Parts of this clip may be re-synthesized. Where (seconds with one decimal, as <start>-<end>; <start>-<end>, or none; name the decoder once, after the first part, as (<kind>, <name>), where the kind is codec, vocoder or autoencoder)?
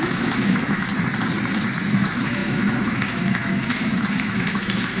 0.0-0.9 (autoencoder, DAC-VAE); 1.9-5.0